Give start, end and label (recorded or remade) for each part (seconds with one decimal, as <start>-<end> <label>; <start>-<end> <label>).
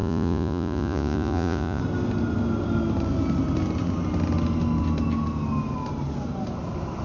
0.0-1.8 remade; 1.8-7.0 recorded